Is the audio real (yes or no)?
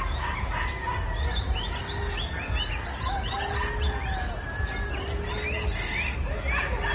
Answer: yes